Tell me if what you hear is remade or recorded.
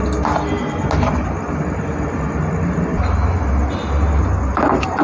recorded